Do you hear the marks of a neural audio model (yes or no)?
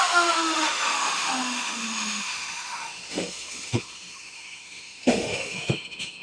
yes